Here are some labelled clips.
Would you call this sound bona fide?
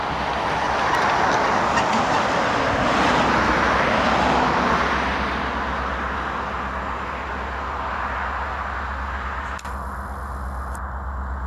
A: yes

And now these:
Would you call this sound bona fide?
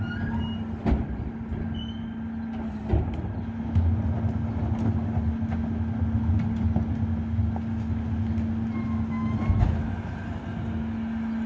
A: yes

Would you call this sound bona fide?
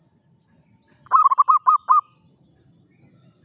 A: yes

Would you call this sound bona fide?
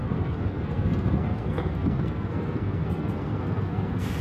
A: no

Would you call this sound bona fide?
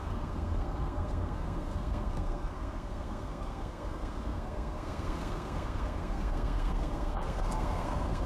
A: no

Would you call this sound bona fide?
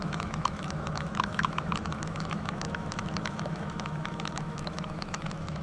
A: no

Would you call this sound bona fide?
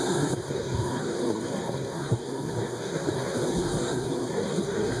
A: no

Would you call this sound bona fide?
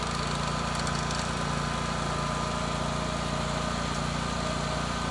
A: yes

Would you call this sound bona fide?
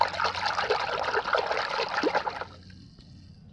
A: yes